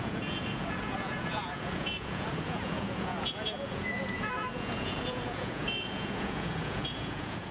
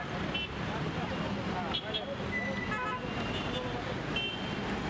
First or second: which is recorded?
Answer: second